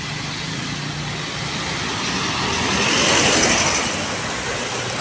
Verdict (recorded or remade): recorded